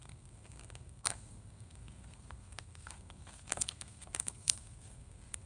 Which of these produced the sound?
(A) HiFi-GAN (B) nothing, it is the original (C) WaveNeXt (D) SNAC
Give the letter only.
D